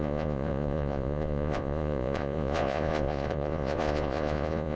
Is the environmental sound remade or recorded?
remade